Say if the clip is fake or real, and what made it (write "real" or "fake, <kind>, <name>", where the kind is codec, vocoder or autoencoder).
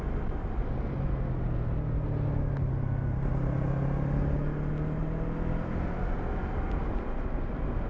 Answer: real